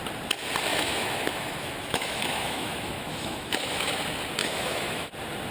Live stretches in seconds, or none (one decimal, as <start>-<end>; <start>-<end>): 0.0-0.7; 4.0-4.4; 5.1-5.5